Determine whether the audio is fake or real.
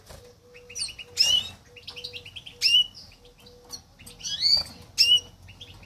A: real